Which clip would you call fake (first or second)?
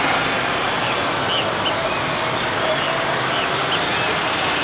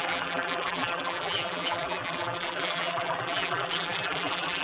second